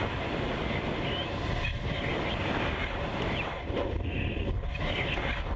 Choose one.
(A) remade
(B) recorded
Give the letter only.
B